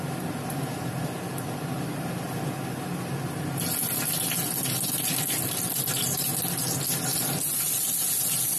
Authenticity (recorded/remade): recorded